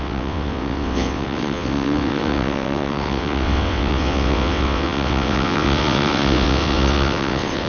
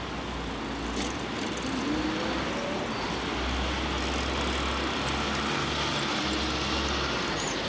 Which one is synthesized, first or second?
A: first